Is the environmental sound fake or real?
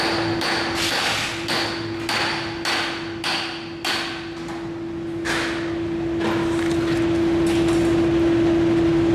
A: real